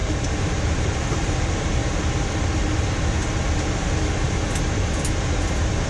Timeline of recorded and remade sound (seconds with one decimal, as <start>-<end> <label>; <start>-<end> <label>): 0.0-1.8 remade; 1.8-5.2 recorded; 5.2-5.9 remade

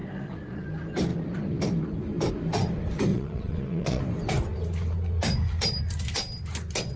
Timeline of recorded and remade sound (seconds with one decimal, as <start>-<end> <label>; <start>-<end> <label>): 0.0-3.1 recorded; 3.1-4.0 remade; 4.0-7.0 recorded

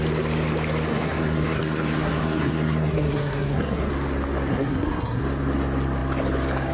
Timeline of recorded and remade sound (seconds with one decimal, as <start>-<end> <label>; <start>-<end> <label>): 0.0-0.9 recorded; 0.9-3.9 remade; 3.9-4.5 recorded; 4.5-5.2 remade; 5.2-6.7 recorded

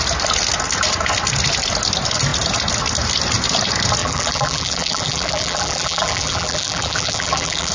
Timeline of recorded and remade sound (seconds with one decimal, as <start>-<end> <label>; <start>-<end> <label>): 0.0-4.0 recorded; 4.0-7.7 remade

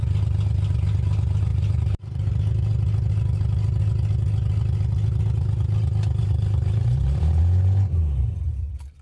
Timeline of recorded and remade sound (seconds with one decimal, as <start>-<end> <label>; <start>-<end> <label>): 0.0-1.5 recorded; 1.5-2.3 remade; 2.3-6.2 recorded; 6.2-7.4 remade; 7.4-9.0 recorded